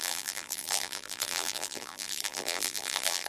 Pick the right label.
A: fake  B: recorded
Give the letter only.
A